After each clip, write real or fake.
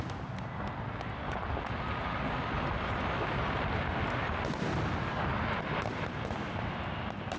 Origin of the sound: real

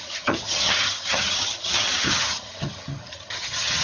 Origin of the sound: fake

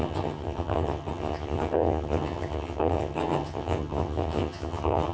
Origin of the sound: fake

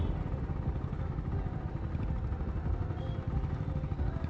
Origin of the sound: real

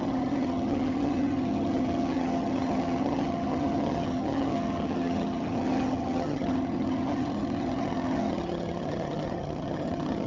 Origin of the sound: fake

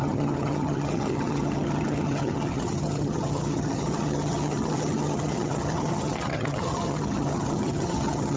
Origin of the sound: fake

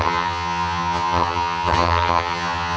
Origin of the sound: fake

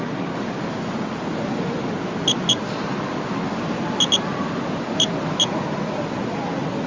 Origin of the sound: real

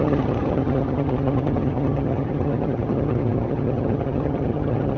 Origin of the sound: fake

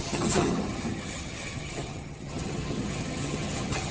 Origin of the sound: fake